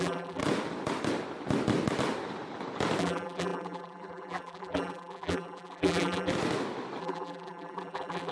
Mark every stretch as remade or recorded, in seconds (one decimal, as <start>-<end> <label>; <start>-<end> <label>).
0.0-0.4 remade; 0.4-3.0 recorded; 3.0-6.3 remade; 6.3-7.0 recorded; 7.0-8.3 remade